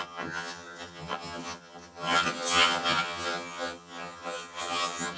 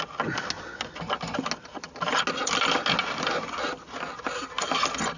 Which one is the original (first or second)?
second